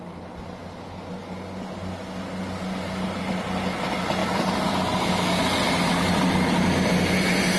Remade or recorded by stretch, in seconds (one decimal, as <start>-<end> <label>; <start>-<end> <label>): 0.0-7.6 recorded